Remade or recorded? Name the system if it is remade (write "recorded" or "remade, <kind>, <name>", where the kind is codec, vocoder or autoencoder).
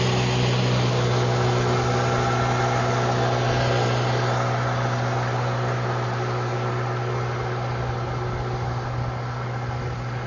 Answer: recorded